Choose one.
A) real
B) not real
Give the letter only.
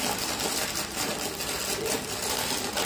A